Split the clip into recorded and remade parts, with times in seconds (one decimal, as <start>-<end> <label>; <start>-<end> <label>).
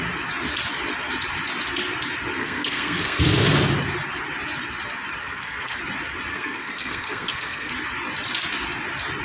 0.0-2.4 recorded; 2.4-3.2 remade; 3.2-5.2 recorded; 5.2-5.8 remade; 5.8-6.3 recorded; 6.3-7.7 remade; 7.7-9.2 recorded